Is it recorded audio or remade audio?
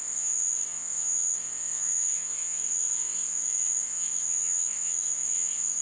remade